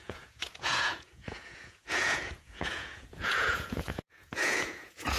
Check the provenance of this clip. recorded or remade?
remade